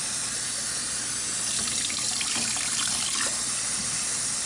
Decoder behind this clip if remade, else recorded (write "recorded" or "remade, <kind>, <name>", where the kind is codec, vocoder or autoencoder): recorded